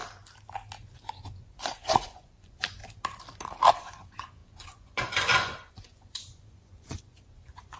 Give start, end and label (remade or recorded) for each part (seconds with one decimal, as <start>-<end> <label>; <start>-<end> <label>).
0.0-0.8 recorded; 0.8-2.8 remade; 2.8-3.7 recorded; 3.7-7.8 remade

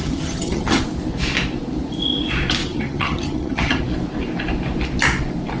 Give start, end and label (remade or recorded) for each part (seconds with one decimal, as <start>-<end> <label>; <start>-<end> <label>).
0.0-0.8 remade; 0.8-2.6 recorded; 2.6-3.8 remade; 3.8-5.6 recorded

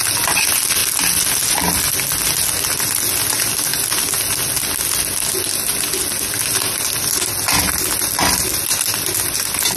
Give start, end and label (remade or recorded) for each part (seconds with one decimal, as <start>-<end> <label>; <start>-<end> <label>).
0.0-9.8 recorded

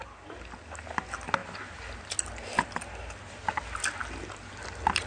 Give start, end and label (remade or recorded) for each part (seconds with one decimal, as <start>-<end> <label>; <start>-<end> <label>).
0.0-5.1 recorded

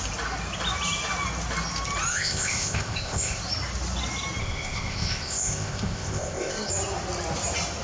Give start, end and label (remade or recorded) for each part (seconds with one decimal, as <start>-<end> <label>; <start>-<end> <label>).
0.0-2.1 recorded; 2.1-3.4 remade; 3.4-4.4 recorded; 4.4-6.7 remade; 6.7-7.8 recorded

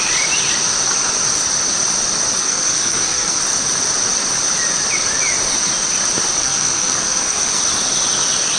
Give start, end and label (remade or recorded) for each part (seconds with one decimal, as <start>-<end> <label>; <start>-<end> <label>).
0.0-2.4 recorded; 2.4-3.4 remade; 3.4-6.4 recorded; 6.4-7.6 remade; 7.6-8.6 recorded